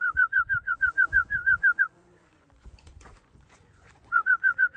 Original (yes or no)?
no